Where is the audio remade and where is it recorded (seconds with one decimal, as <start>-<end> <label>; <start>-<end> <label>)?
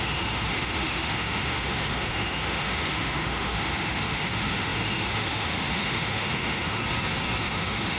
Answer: 0.0-6.8 remade; 6.8-7.4 recorded; 7.4-8.0 remade